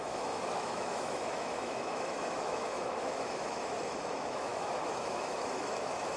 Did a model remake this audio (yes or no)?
yes